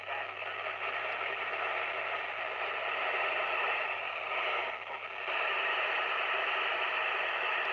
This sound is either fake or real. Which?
real